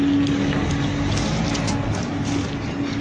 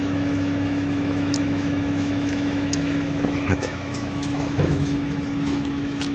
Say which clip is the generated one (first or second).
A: second